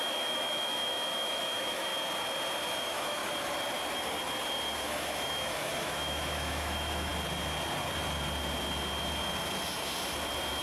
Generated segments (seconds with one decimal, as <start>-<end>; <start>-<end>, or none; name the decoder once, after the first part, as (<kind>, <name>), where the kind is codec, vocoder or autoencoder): 0.0-1.9 (autoencoder, DAC-VAE); 2.8-3.2; 4.8-7.1